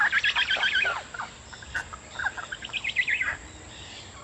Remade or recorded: remade